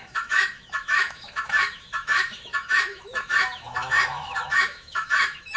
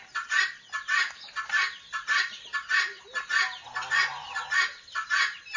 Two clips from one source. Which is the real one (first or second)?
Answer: second